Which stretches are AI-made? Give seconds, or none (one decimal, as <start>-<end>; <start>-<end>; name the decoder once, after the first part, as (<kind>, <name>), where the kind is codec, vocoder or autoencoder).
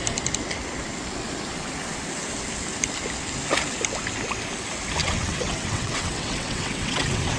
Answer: 5.0-7.4 (vocoder, WaveNeXt)